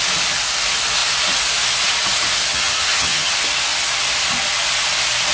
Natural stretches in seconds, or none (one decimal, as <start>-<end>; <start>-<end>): 0.0-2.5; 3.3-5.3